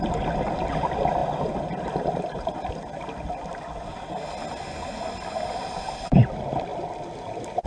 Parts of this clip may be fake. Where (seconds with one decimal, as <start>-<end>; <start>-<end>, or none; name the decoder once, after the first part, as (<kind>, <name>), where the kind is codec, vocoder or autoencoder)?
none